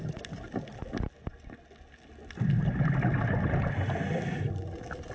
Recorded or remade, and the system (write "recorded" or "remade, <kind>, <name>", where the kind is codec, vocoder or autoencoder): recorded